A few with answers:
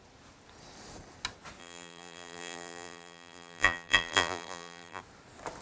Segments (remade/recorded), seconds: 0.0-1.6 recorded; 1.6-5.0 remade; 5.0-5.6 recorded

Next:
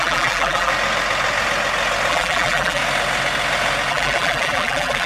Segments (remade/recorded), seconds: 0.0-0.7 remade; 0.7-2.1 recorded; 2.1-2.8 remade; 2.8-3.9 recorded; 3.9-5.1 remade

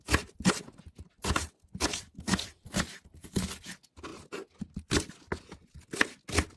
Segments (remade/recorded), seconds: 0.0-6.6 recorded